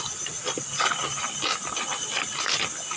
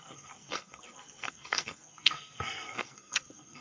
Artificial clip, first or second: second